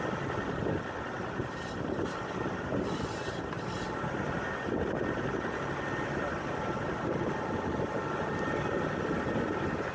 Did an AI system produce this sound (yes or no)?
no